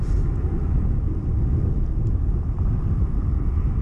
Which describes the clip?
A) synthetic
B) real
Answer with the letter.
B